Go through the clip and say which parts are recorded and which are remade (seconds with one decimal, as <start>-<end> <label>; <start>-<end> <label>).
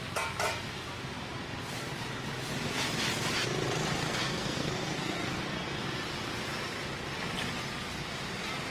0.0-4.0 recorded; 4.0-5.4 remade; 5.4-8.7 recorded